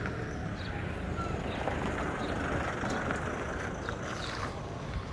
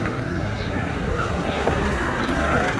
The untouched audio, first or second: first